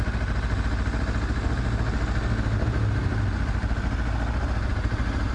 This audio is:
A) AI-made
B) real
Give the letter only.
B